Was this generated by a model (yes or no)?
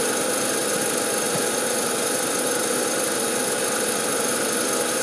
no